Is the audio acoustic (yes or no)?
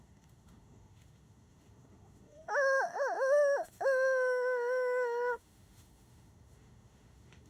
no